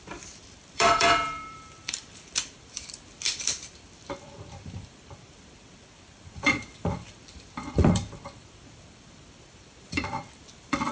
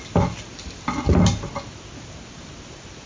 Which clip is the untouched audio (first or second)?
second